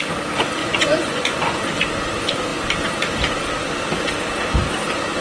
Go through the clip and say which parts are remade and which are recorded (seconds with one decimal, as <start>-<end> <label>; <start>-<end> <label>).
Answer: 0.0-0.6 recorded; 0.6-1.6 remade; 1.6-5.2 recorded